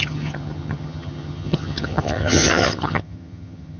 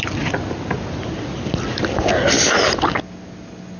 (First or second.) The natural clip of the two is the second